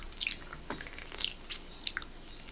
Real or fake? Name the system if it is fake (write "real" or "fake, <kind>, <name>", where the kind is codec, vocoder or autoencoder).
real